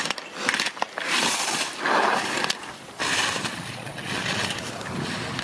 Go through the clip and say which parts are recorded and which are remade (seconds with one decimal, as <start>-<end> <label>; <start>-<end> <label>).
0.0-3.4 recorded; 3.4-4.5 remade; 4.5-5.4 recorded